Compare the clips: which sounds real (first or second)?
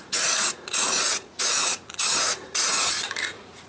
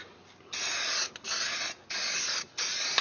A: second